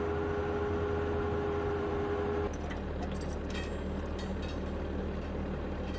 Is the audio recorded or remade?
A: recorded